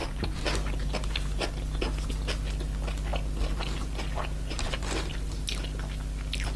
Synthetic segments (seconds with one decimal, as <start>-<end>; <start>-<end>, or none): 0.0-1.5